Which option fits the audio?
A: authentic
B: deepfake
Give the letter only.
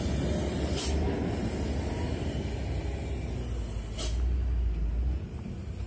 A